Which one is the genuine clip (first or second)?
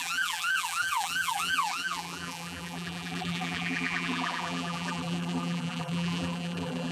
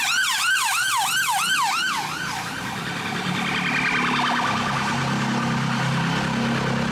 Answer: second